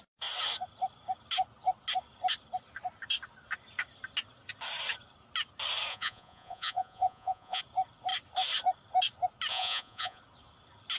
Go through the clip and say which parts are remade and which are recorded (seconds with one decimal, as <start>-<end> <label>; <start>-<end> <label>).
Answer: 0.0-5.9 recorded; 5.9-7.6 remade; 7.6-9.5 recorded; 9.5-10.2 remade; 10.2-11.0 recorded